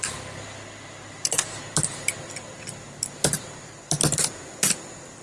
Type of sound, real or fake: real